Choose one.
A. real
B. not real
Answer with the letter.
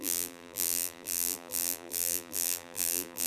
B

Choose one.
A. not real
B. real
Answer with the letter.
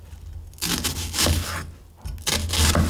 B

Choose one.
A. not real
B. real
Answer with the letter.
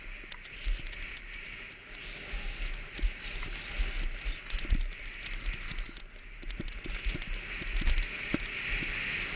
B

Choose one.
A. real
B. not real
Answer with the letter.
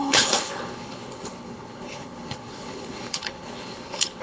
B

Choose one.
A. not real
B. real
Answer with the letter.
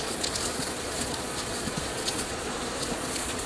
A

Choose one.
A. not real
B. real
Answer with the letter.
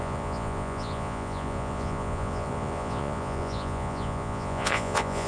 A